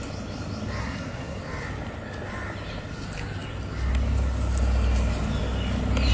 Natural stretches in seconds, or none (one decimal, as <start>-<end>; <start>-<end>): 0.0-0.8; 1.4-6.1

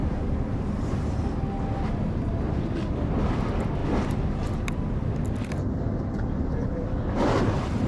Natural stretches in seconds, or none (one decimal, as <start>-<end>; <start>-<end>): 0.0-7.9